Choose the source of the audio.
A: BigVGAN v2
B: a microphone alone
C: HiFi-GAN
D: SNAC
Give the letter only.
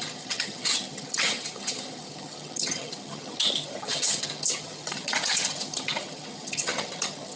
C